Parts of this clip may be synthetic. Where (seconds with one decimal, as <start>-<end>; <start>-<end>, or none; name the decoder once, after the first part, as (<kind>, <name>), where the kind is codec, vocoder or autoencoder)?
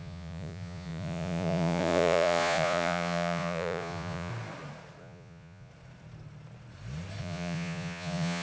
0.0-4.3 (vocoder, Vocos); 5.0-5.7; 7.2-8.4